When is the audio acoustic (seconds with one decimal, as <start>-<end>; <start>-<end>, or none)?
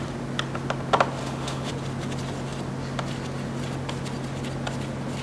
0.0-1.2; 1.7-5.2